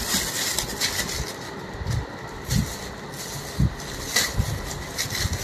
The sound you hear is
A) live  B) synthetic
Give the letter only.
A